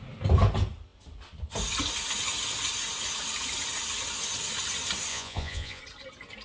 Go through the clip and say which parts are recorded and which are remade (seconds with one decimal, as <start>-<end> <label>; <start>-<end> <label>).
0.0-5.1 recorded; 5.1-5.8 remade; 5.8-6.4 recorded

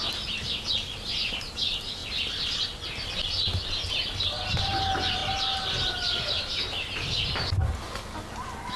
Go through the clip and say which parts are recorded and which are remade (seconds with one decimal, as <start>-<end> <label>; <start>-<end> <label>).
0.0-8.8 recorded

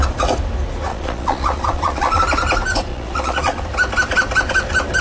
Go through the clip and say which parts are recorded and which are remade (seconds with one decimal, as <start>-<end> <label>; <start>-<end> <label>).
0.0-0.9 recorded; 0.9-2.2 remade; 2.2-2.9 recorded; 2.9-3.6 remade; 3.6-5.0 recorded

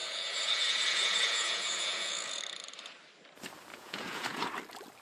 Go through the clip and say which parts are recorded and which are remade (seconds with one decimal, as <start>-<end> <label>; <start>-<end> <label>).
0.0-2.4 remade; 2.4-3.7 recorded; 3.7-4.5 remade; 4.5-5.0 recorded

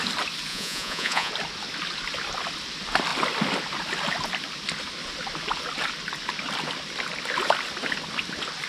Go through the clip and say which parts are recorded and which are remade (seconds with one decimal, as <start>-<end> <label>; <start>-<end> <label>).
0.0-0.5 recorded; 0.5-1.3 remade; 1.3-8.7 recorded

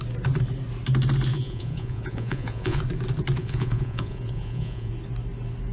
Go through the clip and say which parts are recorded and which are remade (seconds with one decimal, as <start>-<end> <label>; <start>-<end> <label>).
0.0-1.3 recorded; 1.3-2.8 remade; 2.8-3.4 recorded; 3.4-4.9 remade; 4.9-5.7 recorded

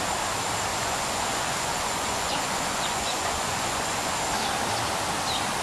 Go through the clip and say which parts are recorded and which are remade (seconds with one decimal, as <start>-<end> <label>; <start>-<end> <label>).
0.0-0.7 recorded; 0.7-4.1 remade; 4.1-5.6 recorded

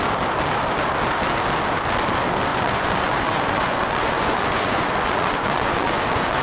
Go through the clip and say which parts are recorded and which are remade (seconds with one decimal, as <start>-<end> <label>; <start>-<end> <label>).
0.0-2.5 recorded; 2.5-6.4 remade